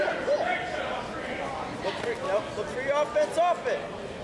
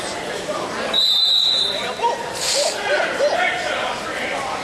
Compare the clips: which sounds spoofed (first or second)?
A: second